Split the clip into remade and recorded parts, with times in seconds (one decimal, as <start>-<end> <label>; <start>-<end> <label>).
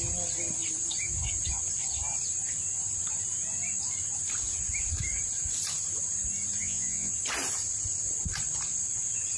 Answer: 0.0-6.6 recorded; 6.6-7.1 remade; 7.1-9.4 recorded